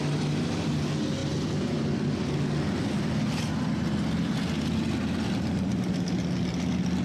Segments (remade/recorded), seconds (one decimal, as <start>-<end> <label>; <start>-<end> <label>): 0.0-7.0 recorded